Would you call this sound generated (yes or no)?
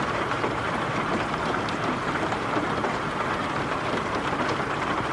yes